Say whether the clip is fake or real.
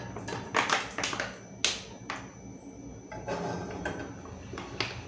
real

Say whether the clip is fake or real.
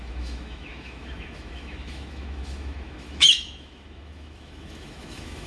fake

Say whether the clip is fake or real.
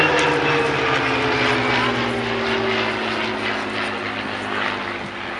real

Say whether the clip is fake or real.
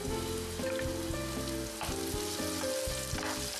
real